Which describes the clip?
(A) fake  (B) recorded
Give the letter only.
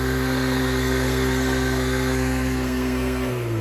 A